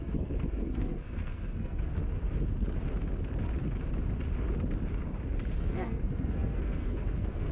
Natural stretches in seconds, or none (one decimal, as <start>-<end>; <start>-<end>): 2.0-5.6

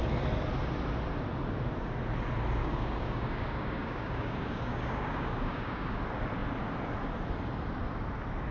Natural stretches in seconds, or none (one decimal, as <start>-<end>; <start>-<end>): 0.0-2.6; 6.0-8.5

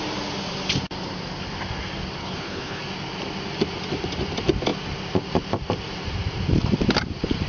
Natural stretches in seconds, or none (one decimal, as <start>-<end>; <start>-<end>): 0.0-2.2; 2.8-7.5

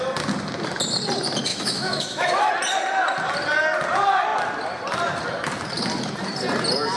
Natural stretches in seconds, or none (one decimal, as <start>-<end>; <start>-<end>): 0.0-1.5; 2.5-7.0

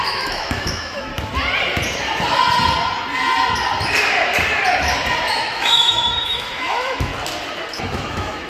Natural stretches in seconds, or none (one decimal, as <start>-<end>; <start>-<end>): 1.1-5.3; 7.1-7.7

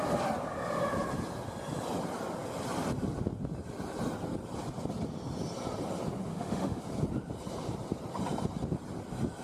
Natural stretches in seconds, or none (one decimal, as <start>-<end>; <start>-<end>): 0.0-6.3; 6.8-9.4